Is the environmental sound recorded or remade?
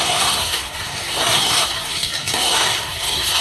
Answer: remade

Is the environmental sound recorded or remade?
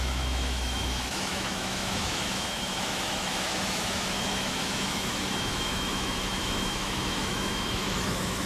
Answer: remade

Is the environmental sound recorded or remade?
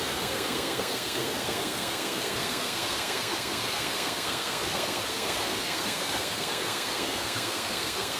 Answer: remade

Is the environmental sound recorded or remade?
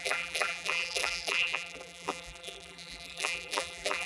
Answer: remade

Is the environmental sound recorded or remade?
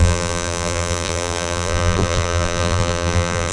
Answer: remade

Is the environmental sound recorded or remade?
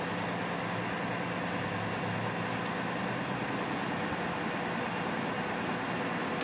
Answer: recorded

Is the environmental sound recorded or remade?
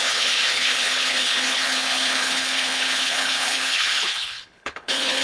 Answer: remade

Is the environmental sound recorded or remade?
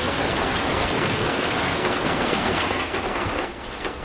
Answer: remade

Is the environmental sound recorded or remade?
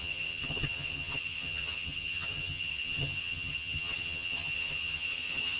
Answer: remade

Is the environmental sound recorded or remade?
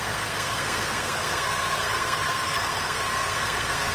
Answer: remade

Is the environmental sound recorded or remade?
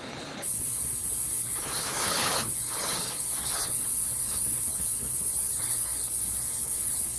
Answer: remade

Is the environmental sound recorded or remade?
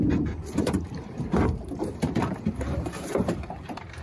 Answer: remade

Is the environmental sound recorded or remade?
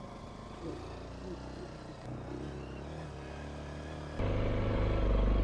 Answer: recorded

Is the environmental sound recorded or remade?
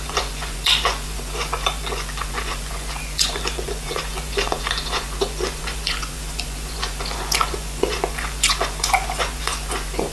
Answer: remade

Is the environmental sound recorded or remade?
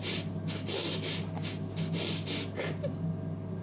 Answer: recorded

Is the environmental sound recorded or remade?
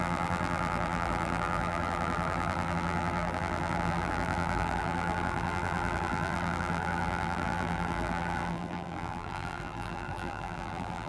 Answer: remade